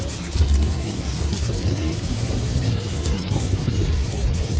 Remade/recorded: remade